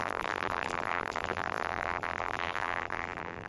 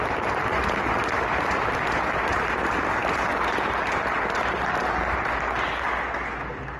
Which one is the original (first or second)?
second